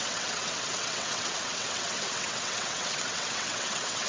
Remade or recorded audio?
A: remade